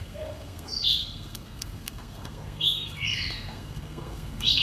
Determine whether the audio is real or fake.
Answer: fake